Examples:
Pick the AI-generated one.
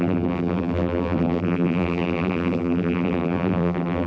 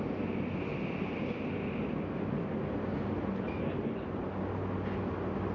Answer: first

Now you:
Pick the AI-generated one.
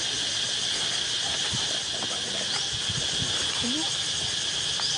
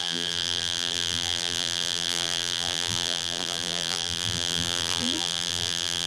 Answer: second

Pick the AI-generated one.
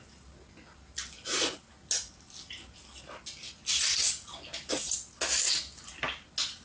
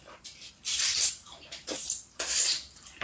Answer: second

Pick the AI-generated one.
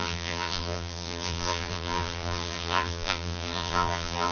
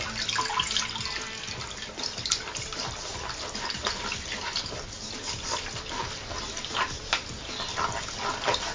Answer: first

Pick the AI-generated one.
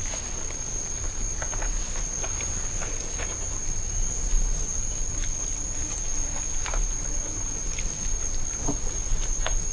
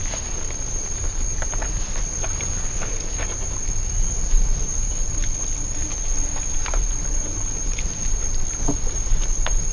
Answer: second